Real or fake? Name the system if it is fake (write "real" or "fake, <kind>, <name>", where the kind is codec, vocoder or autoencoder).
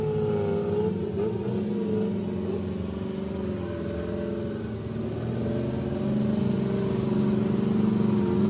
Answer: real